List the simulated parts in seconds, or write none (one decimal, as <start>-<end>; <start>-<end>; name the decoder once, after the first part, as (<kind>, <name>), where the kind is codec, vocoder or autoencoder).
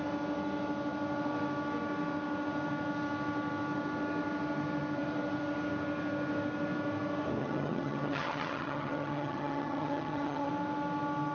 7.4-10.5 (vocoder, HiFi-GAN)